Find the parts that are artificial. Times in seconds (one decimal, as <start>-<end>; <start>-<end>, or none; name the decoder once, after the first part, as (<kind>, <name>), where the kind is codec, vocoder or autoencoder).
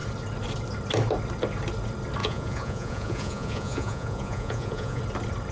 2.2-5.0 (vocoder, Vocos)